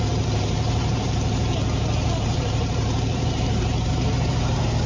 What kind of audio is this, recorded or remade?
remade